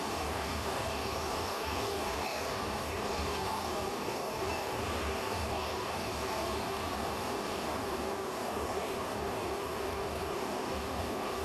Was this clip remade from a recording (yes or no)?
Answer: yes